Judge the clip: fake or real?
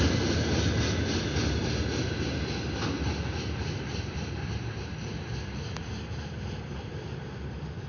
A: real